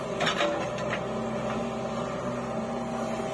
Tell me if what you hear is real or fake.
real